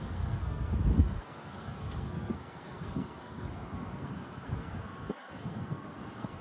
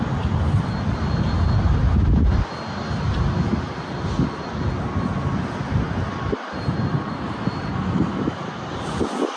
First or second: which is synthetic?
first